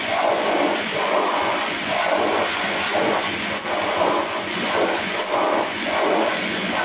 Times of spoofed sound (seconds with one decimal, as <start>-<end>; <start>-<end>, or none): 0.0-6.8